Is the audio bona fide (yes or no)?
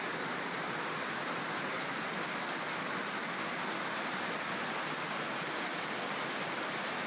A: yes